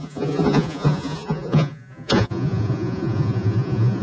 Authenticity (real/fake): fake